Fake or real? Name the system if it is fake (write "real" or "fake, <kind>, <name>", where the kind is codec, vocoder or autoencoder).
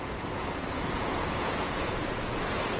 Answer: fake, vocoder, Vocos